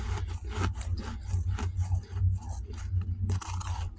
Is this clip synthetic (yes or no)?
no